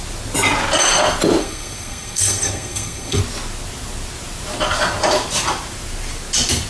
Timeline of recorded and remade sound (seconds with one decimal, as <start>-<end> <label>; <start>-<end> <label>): 0.0-1.4 recorded; 1.4-3.2 remade; 3.2-6.7 recorded

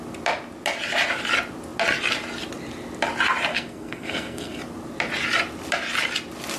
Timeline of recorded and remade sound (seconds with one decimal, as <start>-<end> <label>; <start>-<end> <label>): 0.0-3.5 recorded; 3.5-4.6 remade; 4.6-6.6 recorded